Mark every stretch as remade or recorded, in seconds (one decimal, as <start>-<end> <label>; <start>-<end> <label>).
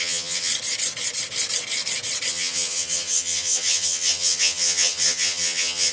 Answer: 0.0-0.5 remade; 0.5-2.3 recorded; 2.3-5.9 remade